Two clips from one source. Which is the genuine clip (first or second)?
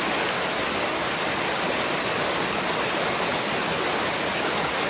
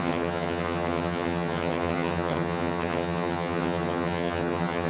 first